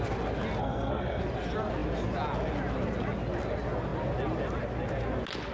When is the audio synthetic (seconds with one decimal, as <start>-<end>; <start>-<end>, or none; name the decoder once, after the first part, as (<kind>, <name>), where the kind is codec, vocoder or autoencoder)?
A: 0.6-1.2 (codec, SNAC)